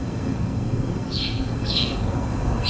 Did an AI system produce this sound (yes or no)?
yes